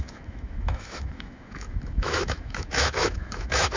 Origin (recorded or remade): remade